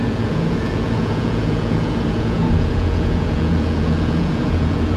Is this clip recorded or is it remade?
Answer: remade